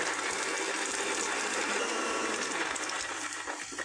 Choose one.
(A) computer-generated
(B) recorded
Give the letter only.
B